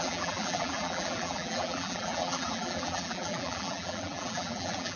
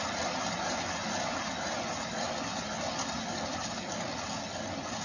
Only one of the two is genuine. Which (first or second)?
second